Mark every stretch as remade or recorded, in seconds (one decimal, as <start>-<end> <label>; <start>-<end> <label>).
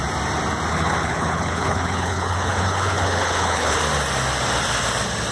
0.0-0.7 recorded; 0.7-3.8 remade; 3.8-5.3 recorded